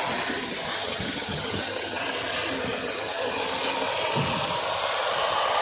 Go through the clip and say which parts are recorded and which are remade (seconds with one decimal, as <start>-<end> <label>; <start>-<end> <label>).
0.0-0.8 recorded; 0.8-2.0 remade; 2.0-2.8 recorded; 2.8-3.4 remade; 3.4-5.6 recorded